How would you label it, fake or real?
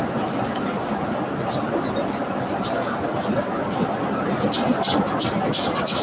real